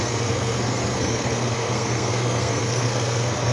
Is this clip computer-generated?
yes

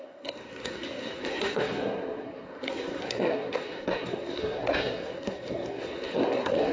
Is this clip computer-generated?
yes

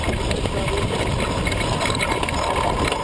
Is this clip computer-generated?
no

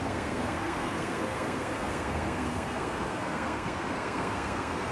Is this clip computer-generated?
yes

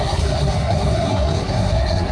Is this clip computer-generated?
yes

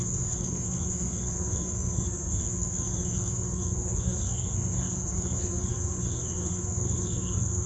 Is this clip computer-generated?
yes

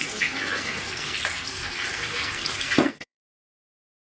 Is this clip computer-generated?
yes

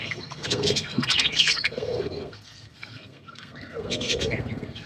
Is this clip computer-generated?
yes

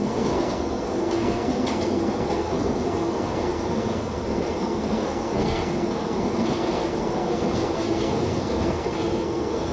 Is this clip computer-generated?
yes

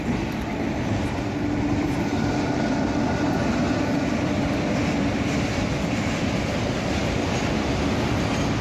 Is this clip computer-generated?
no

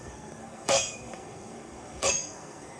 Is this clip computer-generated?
yes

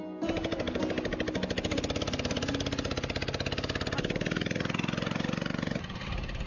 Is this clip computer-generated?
no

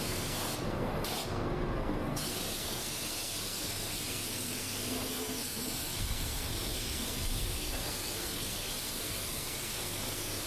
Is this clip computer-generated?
yes